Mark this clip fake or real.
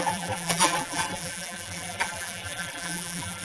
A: fake